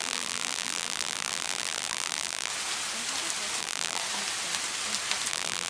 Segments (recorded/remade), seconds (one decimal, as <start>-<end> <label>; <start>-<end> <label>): 0.0-2.5 remade; 2.5-3.6 recorded; 3.6-4.0 remade; 4.0-5.3 recorded; 5.3-5.7 remade